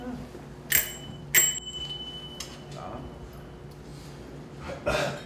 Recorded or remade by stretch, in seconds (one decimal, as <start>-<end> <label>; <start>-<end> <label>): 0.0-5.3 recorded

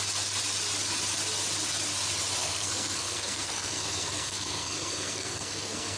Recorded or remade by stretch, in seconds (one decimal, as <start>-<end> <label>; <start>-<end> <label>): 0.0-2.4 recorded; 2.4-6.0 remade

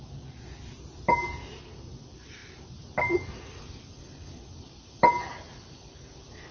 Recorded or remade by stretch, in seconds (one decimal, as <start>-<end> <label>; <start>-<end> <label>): 0.0-6.5 recorded

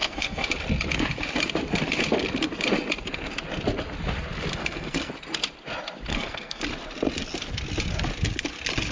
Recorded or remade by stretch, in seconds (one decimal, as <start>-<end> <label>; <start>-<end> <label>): 0.0-0.5 remade; 0.5-4.6 recorded; 4.6-5.1 remade; 5.1-6.1 recorded; 6.1-6.6 remade; 6.6-8.9 recorded